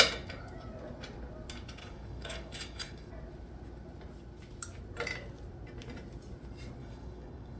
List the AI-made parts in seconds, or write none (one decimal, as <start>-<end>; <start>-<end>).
1.8-3.1; 6.8-7.6